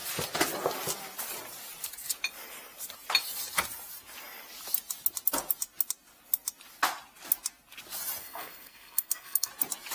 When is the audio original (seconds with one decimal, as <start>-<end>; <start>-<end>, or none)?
0.0-8.2; 9.5-9.9